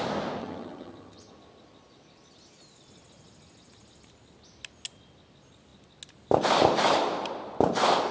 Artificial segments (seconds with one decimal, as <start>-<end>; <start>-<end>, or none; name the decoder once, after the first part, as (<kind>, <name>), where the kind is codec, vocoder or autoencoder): 0.4-1.3 (vocoder, HiFi-GAN)